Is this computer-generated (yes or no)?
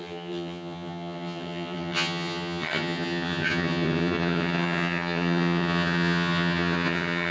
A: yes